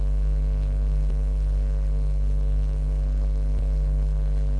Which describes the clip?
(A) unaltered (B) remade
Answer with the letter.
B